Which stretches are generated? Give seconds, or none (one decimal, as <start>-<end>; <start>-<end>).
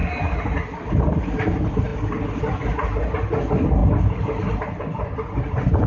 none